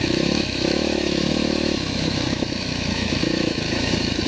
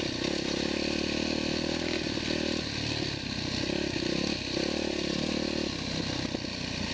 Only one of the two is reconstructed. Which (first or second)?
first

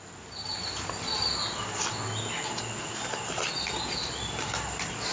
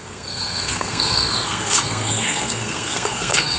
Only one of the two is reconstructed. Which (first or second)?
second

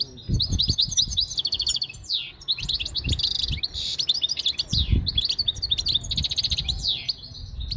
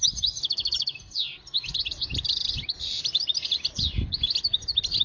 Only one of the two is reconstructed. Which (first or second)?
second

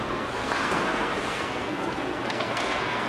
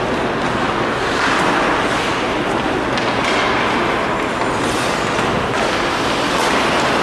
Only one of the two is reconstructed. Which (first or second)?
first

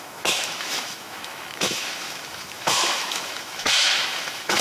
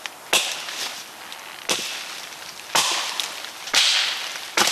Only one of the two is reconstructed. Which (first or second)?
first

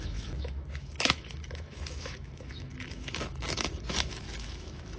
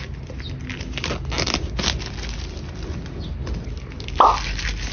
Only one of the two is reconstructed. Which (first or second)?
first